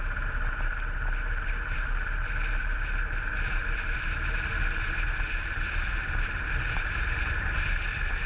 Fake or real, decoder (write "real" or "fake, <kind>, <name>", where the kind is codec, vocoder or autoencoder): fake, vocoder, BigVGAN v2